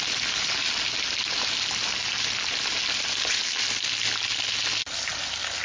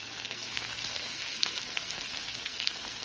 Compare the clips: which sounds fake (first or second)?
second